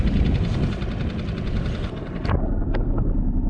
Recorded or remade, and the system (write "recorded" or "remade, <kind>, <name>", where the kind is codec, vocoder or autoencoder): recorded